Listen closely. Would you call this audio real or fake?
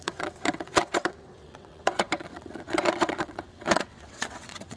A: fake